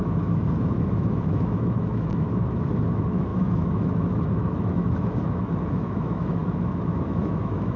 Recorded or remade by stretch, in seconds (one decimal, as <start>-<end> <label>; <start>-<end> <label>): 0.0-7.8 remade